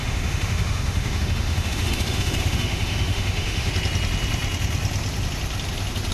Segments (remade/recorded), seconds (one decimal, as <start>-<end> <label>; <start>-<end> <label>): 0.0-3.7 remade; 3.7-6.1 recorded